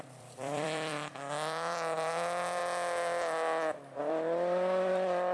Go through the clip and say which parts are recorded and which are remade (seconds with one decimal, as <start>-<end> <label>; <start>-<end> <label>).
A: 0.0-2.6 remade; 2.6-4.1 recorded; 4.1-5.3 remade